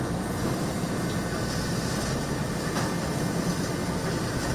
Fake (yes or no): yes